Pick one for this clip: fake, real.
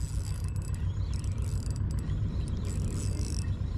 real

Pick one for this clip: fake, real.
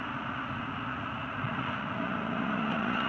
fake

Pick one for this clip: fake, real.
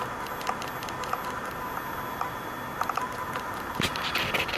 real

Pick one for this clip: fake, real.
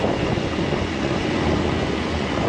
fake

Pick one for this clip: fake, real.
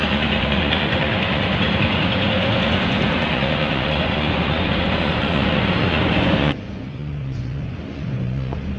fake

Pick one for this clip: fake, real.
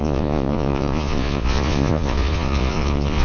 fake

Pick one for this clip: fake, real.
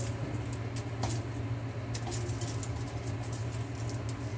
real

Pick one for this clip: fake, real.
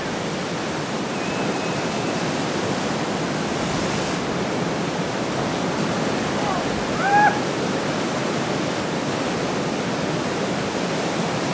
real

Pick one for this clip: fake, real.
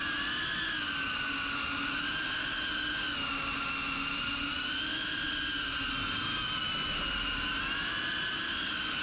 real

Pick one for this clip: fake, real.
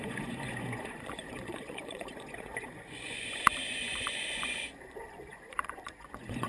fake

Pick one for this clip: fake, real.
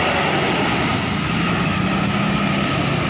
real